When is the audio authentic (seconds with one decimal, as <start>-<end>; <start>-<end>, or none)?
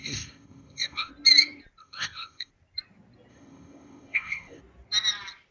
1.1-1.8; 2.5-3.3; 4.6-5.5